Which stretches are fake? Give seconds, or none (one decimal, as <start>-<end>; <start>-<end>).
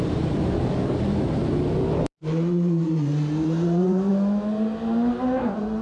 0.0-4.1